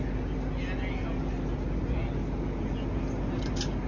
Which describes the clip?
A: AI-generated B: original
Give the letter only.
B